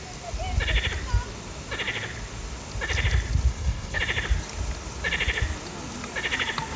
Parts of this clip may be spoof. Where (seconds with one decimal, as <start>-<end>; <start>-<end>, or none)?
3.5-4.0